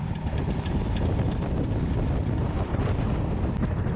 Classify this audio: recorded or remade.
remade